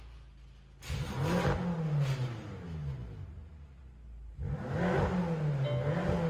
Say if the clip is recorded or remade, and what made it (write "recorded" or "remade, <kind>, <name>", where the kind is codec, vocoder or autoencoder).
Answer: recorded